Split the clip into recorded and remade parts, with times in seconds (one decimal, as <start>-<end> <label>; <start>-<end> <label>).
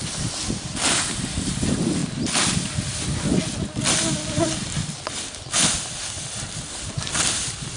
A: 0.0-2.0 remade; 2.0-6.7 recorded; 6.7-7.8 remade